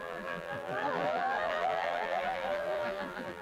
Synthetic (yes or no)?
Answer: yes